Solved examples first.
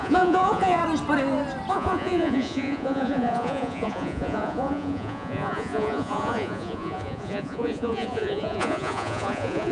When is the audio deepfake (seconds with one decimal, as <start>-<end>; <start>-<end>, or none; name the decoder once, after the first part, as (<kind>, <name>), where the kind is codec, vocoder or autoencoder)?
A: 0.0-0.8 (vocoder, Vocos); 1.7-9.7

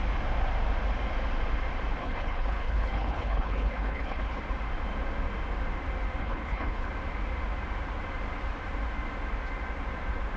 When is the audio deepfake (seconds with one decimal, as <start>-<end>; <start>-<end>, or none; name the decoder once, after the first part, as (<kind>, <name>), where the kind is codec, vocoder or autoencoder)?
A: 2.0-4.4 (codec, HILCodec); 6.2-6.9

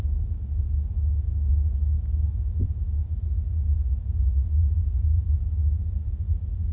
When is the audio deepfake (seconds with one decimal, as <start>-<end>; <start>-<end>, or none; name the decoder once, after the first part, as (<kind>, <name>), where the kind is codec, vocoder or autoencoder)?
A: none